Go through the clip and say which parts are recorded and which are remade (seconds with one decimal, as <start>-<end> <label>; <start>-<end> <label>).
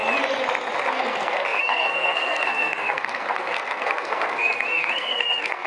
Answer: 0.0-0.9 recorded; 0.9-5.7 remade